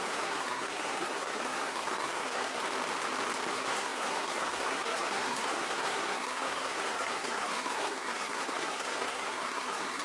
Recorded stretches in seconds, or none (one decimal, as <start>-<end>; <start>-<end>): 2.6-3.5